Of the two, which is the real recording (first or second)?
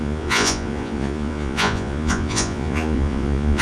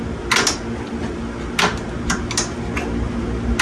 second